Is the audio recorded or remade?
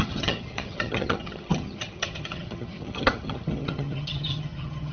remade